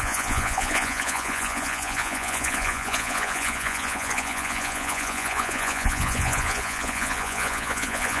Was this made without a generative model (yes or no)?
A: no